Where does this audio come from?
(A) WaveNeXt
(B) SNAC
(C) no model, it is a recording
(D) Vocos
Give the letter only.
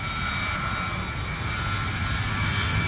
C